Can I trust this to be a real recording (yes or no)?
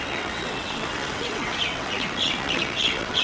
no